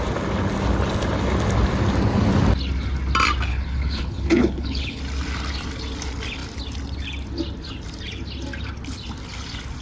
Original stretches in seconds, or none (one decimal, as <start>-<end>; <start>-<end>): 0.0-3.5; 5.0-9.8